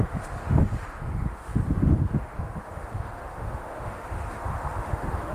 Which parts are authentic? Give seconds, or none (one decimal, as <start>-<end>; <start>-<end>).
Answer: none